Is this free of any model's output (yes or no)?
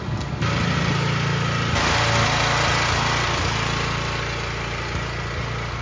yes